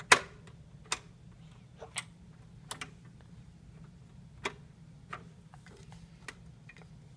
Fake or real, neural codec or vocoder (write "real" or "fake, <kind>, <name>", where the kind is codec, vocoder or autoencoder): real